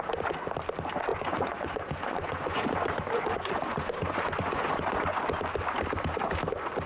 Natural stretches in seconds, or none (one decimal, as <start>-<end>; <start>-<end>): 0.0-1.1; 5.2-6.9